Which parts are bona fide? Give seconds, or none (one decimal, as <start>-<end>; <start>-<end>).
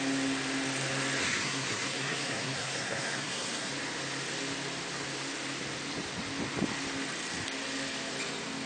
0.0-1.2; 3.7-8.7